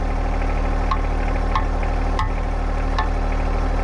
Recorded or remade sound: recorded